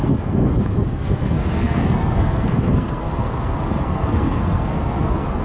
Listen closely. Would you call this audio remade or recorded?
remade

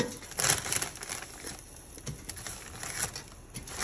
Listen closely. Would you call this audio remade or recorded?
recorded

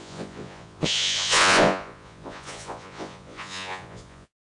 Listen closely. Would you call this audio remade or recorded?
remade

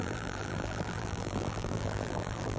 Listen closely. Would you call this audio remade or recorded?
remade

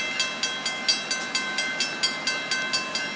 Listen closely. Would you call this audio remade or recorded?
recorded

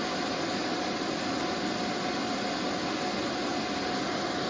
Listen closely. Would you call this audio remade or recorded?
recorded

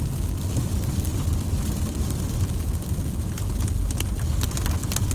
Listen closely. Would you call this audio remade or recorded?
recorded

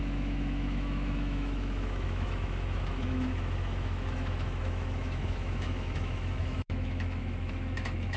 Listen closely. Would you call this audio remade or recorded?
remade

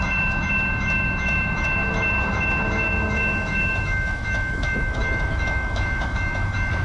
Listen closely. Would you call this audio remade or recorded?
remade